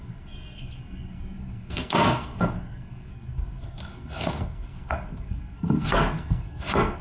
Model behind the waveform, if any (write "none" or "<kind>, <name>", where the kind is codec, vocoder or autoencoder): codec, SNAC